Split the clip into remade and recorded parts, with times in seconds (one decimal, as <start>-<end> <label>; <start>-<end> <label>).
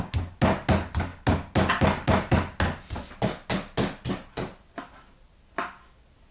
0.0-6.3 recorded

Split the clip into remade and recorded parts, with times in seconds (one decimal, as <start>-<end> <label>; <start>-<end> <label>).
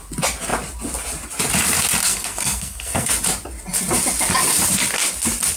0.0-2.0 recorded; 2.0-3.1 remade; 3.1-5.6 recorded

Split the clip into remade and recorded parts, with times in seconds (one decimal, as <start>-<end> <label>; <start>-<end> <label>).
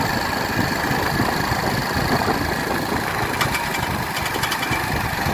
0.0-5.3 recorded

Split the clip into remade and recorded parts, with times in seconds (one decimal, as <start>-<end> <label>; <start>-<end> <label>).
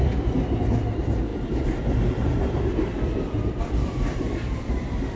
0.0-5.2 remade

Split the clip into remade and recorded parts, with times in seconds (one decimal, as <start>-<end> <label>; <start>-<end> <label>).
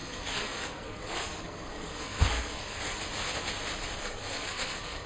0.0-3.0 remade; 3.0-4.0 recorded; 4.0-5.1 remade